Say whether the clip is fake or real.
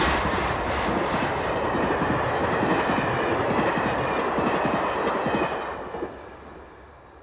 real